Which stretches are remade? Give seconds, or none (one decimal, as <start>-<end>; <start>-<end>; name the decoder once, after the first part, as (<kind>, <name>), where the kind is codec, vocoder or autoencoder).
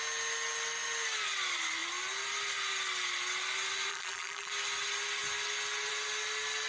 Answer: 3.9-4.5 (vocoder, BigVGAN v2)